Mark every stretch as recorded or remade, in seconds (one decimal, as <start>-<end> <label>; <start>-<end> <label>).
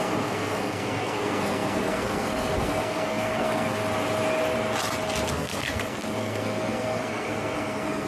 0.0-3.8 remade; 3.8-5.3 recorded; 5.3-8.1 remade